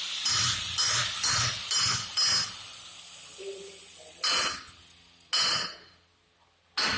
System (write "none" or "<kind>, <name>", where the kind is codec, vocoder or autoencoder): none